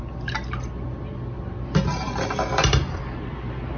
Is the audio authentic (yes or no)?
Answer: yes